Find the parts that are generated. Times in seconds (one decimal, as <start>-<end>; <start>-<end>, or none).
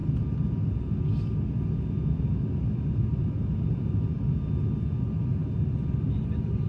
none